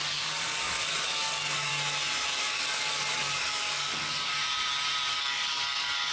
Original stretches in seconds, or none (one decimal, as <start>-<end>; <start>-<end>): 1.7-2.4; 4.4-5.1